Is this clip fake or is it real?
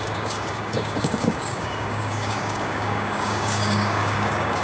fake